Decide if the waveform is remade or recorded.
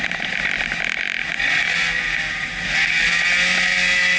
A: recorded